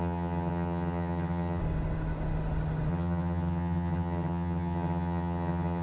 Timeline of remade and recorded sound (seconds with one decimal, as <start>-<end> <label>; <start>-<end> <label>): 0.0-1.6 remade; 1.6-2.9 recorded; 2.9-5.8 remade

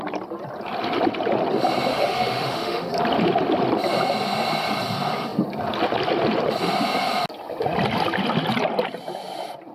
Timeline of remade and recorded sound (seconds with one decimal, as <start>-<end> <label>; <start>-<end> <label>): 0.0-1.9 recorded; 1.9-2.9 remade; 2.9-9.7 recorded